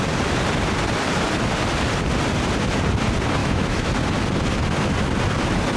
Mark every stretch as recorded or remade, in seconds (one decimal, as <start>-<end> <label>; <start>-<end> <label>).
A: 0.0-3.4 recorded; 3.4-3.9 remade; 3.9-5.8 recorded